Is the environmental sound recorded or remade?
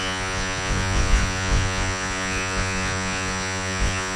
remade